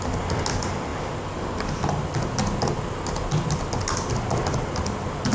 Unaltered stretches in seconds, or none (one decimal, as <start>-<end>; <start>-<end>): 0.0-5.3